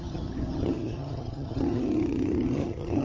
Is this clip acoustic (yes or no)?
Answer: no